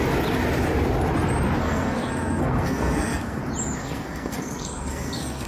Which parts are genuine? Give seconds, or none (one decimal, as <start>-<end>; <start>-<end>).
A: 0.0-1.6; 3.4-3.8